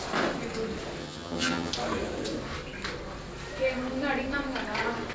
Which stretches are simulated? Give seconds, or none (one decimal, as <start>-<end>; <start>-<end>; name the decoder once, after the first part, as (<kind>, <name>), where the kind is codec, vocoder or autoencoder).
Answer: 1.0-1.7 (vocoder, HiFi-GAN)